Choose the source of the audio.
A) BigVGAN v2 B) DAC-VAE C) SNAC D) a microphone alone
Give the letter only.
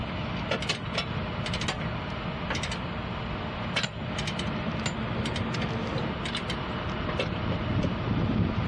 D